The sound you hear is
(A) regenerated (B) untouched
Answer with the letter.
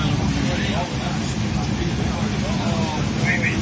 B